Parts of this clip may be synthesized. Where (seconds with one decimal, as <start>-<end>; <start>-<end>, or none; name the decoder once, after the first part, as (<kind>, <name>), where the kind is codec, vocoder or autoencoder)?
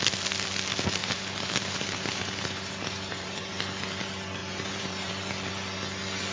1.0-3.5 (vocoder, BigVGAN v2); 4.4-5.1